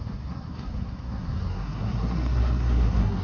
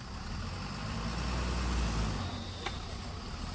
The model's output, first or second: first